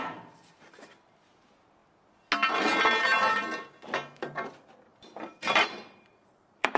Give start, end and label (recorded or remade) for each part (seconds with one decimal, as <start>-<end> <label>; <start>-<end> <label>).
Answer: 0.0-1.8 remade; 1.8-4.2 recorded; 4.2-6.8 remade